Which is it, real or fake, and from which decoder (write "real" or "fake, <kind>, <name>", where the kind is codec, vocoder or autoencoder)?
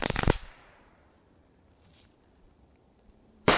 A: fake, vocoder, BigVGAN v2